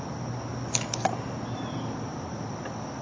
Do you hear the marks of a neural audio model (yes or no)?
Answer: no